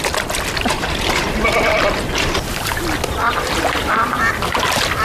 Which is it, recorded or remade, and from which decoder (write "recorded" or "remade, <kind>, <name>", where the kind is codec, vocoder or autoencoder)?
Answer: recorded